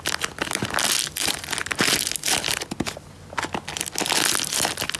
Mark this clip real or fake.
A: real